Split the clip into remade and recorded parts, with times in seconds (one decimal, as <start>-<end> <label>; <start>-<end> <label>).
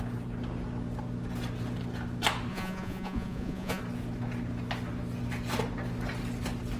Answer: 0.0-2.5 recorded; 2.5-3.8 remade; 3.8-6.8 recorded